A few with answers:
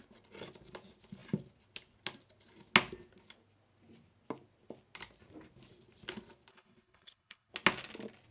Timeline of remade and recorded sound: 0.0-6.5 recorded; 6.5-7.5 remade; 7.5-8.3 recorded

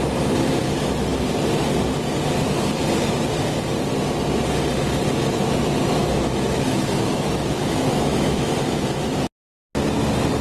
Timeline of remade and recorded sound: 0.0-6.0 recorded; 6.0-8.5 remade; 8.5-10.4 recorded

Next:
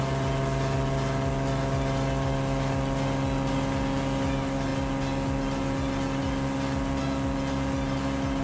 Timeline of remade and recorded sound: 0.0-8.4 recorded